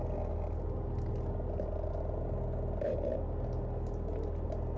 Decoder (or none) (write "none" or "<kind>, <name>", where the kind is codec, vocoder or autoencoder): none